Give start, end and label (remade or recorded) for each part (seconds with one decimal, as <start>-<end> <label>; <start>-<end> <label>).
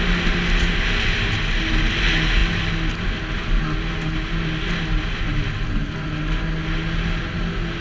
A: 0.0-7.8 recorded